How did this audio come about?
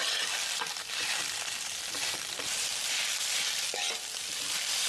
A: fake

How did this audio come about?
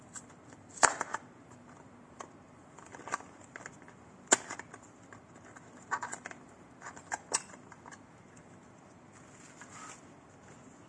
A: real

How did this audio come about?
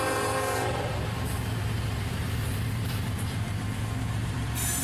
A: fake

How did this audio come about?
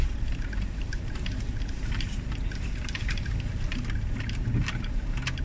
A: fake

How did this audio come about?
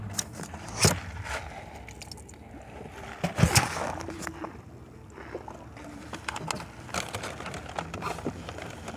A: real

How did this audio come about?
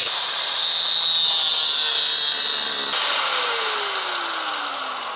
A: real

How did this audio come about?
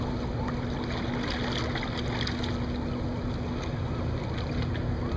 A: real